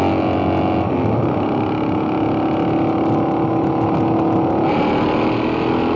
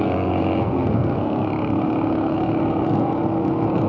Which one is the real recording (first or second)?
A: first